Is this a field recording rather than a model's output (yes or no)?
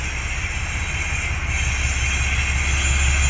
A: yes